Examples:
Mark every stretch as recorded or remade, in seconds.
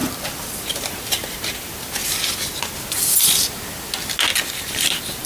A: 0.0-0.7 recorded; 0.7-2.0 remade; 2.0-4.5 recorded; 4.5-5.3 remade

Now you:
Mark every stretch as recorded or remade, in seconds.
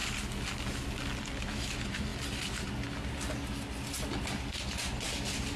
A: 0.0-5.6 recorded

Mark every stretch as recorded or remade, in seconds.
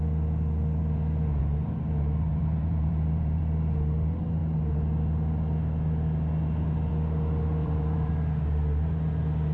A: 0.0-2.3 recorded; 2.3-3.4 remade; 3.4-7.6 recorded; 7.6-8.1 remade; 8.1-9.5 recorded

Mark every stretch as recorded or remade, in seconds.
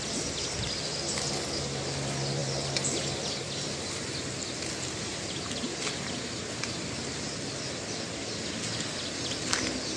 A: 0.0-2.4 recorded; 2.4-3.1 remade; 3.1-5.1 recorded; 5.1-5.9 remade; 5.9-10.0 recorded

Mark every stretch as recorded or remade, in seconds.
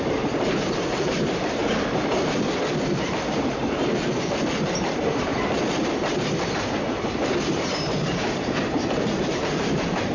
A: 0.0-1.6 remade; 1.6-3.0 recorded; 3.0-5.3 remade; 5.3-7.5 recorded; 7.5-10.1 remade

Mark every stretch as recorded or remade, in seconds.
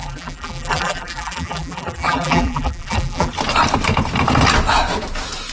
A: 0.0-3.3 remade; 3.3-5.5 recorded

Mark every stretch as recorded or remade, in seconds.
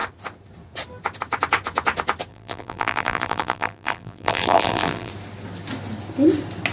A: 0.0-2.3 recorded; 2.3-5.1 remade; 5.1-6.7 recorded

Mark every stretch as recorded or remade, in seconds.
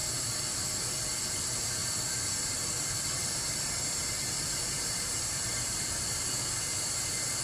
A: 0.0-0.7 remade; 0.7-1.8 recorded; 1.8-6.2 remade; 6.2-7.4 recorded